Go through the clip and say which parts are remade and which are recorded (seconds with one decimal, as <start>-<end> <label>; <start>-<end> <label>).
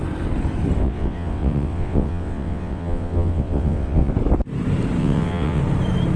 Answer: 0.0-0.8 recorded; 0.8-4.1 remade; 4.1-5.0 recorded; 5.0-5.6 remade; 5.6-6.2 recorded